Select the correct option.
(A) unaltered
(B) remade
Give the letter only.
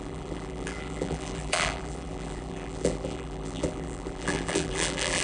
B